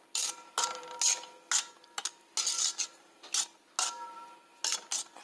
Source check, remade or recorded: recorded